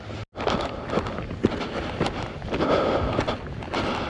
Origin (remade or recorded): recorded